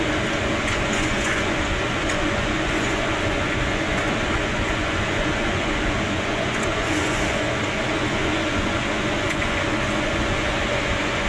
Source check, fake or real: fake